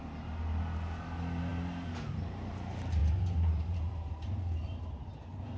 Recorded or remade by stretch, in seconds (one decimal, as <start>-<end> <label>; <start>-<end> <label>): 0.0-5.6 recorded